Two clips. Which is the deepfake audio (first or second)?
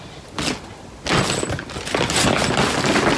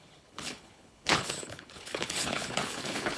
second